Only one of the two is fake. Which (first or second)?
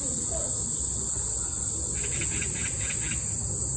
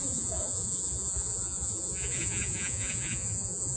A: second